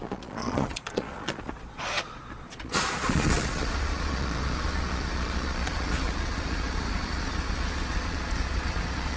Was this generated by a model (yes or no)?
yes